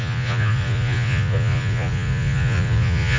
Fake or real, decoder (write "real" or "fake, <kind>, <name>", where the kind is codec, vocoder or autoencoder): fake, vocoder, Vocos